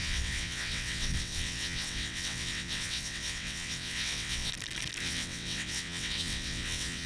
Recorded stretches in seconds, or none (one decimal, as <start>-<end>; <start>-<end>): 4.5-5.0